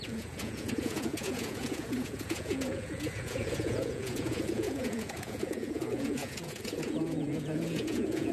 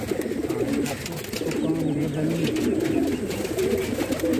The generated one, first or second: first